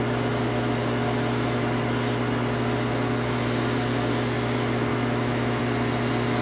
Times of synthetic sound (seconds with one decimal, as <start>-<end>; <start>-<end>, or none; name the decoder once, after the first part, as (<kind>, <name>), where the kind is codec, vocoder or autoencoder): 4.9-5.6 (autoencoder, DAC-VAE)